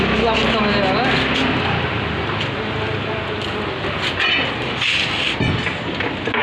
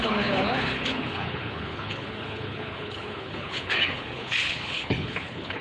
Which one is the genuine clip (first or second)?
first